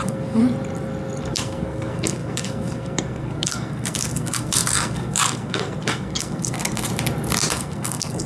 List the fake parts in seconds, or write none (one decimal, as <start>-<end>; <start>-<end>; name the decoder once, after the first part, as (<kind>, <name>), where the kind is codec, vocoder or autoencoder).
0.0-0.4 (codec, SNAC); 1.3-6.9; 7.5-8.3